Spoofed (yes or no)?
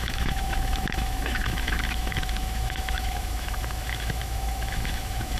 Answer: yes